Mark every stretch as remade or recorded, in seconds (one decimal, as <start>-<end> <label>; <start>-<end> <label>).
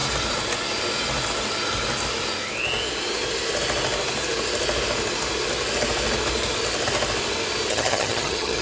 0.0-7.7 recorded; 7.7-8.6 remade